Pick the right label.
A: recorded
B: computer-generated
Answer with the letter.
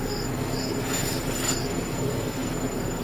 B